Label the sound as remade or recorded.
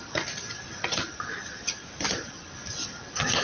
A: recorded